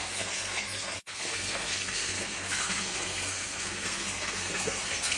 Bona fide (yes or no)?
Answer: no